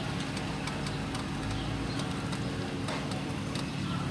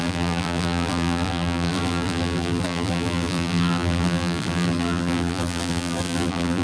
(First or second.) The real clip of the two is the first